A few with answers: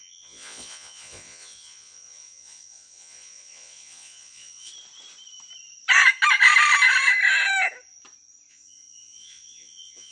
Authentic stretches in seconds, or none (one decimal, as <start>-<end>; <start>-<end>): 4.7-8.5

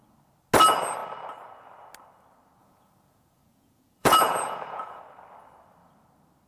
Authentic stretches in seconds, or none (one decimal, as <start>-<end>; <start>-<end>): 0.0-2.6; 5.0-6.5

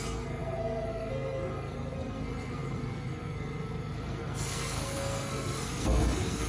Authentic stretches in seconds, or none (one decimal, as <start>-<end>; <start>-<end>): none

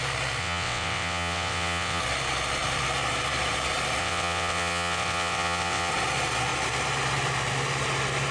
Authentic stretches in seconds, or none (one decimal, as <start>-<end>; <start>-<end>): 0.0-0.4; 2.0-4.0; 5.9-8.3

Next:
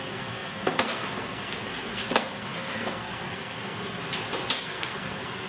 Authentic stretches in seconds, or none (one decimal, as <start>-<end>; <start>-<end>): 4.0-4.6

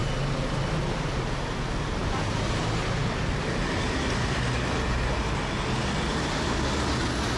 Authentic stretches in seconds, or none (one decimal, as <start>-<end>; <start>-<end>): 0.0-7.4